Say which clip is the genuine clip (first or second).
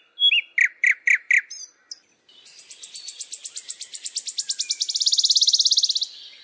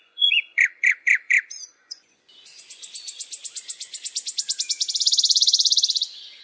first